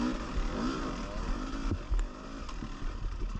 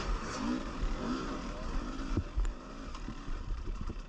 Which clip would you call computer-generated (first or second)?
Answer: second